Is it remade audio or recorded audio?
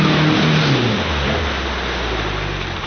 recorded